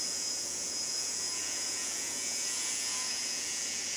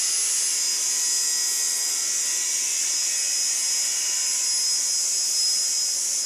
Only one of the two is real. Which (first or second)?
second